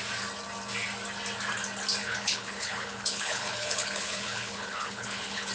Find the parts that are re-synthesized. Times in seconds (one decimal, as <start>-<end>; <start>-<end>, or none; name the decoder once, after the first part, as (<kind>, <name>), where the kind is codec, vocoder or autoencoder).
2.0-5.5 (codec, HILCodec)